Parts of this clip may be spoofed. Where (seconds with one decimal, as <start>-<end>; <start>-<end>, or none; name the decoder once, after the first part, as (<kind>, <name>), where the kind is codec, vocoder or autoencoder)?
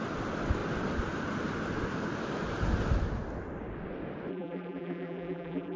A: 4.3-5.8 (vocoder, BigVGAN v2)